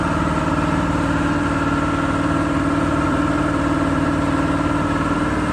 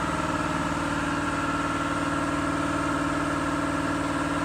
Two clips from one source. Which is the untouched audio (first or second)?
second